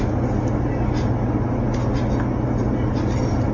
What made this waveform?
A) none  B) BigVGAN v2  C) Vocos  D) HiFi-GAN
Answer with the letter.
A